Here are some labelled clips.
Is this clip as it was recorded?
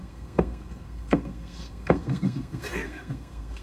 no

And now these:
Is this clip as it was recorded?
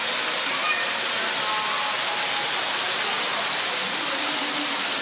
yes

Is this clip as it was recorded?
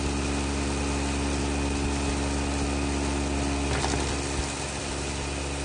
yes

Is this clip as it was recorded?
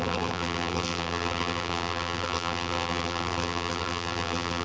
no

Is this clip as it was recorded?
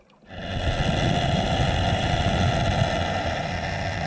yes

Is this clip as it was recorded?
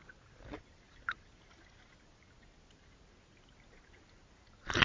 yes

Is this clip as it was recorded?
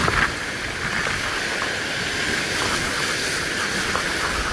yes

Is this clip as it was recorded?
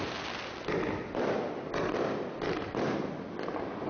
yes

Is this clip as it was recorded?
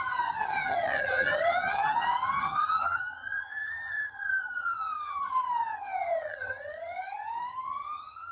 no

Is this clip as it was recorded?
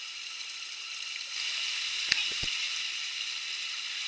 yes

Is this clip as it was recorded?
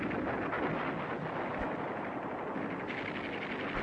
yes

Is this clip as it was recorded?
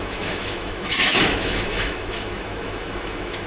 no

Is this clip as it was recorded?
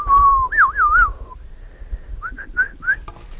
yes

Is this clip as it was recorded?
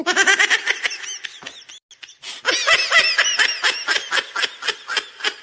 yes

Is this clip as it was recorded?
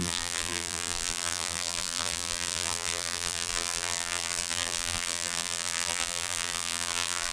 no